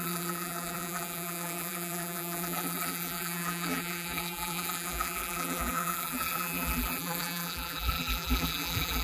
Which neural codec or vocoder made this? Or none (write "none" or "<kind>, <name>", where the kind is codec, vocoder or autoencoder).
vocoder, BigVGAN v2